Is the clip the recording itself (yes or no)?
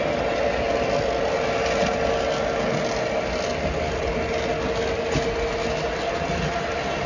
yes